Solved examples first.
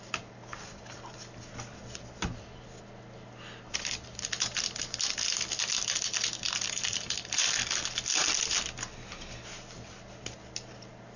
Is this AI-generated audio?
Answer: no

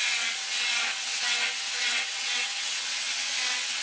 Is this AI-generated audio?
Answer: yes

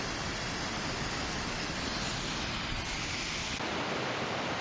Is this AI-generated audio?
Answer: no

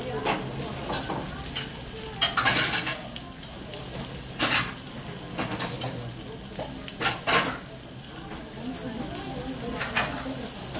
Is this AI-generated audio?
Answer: no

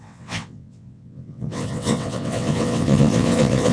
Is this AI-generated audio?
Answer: yes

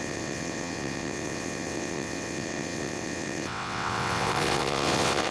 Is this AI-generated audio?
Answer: yes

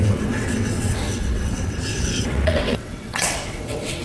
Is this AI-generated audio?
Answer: yes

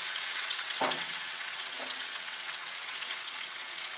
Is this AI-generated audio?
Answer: yes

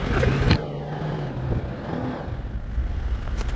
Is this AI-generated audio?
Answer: no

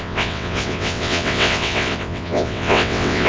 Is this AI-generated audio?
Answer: yes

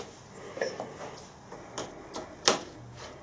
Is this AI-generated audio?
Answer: no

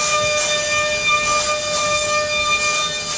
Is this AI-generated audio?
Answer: no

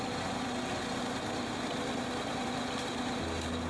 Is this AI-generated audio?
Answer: no